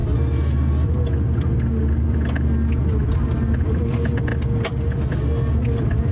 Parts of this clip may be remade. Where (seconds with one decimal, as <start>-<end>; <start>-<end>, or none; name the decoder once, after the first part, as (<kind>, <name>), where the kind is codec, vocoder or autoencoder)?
none